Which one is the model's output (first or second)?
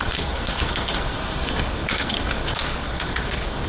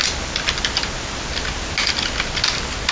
first